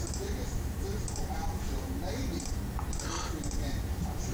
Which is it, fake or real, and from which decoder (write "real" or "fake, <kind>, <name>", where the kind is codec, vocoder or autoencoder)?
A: fake, vocoder, BigVGAN v2